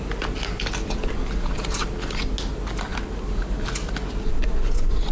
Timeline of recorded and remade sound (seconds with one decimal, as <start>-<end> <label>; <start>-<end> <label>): 0.0-5.1 recorded